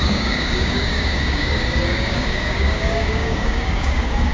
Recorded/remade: remade